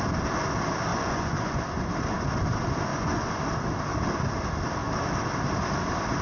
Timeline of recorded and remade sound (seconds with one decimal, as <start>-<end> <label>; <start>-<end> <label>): 0.0-0.9 recorded; 0.9-1.6 remade; 1.6-2.9 recorded; 2.9-3.4 remade; 3.4-6.2 recorded